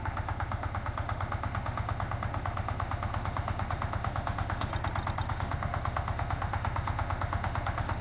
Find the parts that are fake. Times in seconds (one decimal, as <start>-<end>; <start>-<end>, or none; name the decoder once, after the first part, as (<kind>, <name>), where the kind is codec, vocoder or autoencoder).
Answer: 0.0-4.7 (autoencoder, DAC-VAE); 5.3-8.0